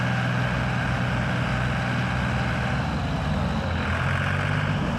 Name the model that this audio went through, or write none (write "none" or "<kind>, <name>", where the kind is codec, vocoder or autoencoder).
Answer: none